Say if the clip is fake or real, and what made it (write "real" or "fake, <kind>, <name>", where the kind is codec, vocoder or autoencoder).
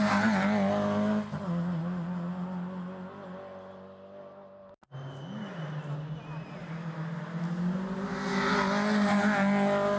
real